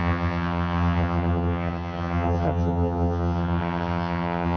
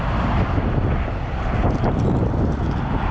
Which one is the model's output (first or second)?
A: first